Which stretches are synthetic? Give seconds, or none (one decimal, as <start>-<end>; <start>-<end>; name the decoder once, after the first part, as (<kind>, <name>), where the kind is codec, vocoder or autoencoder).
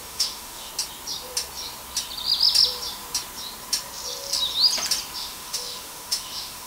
0.0-0.7 (autoencoder, DAC-VAE); 5.2-6.7